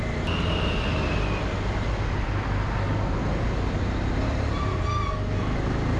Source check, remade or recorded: recorded